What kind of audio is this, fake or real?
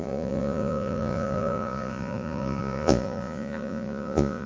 fake